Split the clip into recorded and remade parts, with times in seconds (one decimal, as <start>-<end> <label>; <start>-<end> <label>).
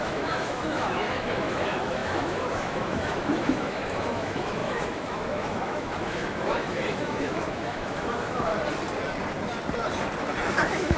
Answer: 0.0-8.5 remade; 8.5-10.5 recorded; 10.5-11.0 remade